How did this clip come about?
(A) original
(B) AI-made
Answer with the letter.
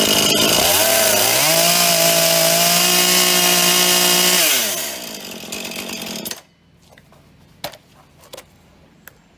A